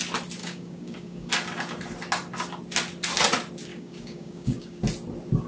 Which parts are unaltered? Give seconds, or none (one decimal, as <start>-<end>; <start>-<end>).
0.0-0.4; 1.3-3.7; 4.8-5.5

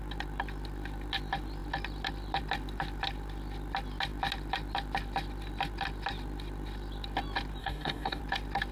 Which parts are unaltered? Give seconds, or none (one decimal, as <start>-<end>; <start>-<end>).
0.0-7.6; 8.2-8.7

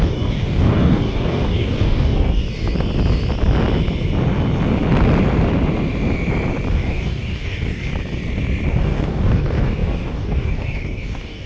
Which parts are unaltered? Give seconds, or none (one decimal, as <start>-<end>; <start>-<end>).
2.4-6.7; 7.9-8.7

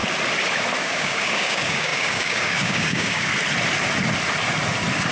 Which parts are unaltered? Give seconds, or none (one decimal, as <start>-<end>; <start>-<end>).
0.0-0.8; 3.3-5.1